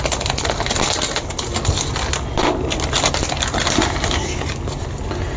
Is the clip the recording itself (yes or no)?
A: yes